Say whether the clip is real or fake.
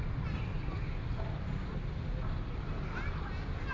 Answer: real